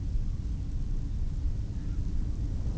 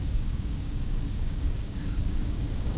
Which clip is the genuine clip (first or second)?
first